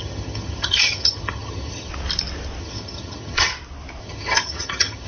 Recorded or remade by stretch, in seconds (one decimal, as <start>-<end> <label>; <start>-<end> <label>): 0.0-1.9 remade; 1.9-2.6 recorded; 2.6-3.5 remade; 3.5-4.0 recorded; 4.0-5.1 remade